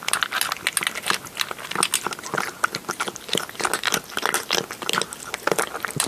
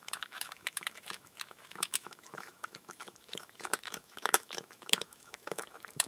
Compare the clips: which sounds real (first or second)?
first